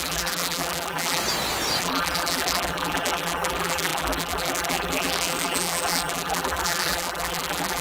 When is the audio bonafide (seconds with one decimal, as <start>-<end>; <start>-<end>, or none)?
1.2-1.8

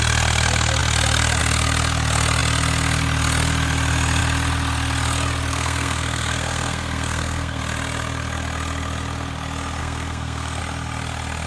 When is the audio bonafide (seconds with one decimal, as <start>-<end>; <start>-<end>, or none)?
0.0-5.5; 7.6-9.8; 10.6-11.5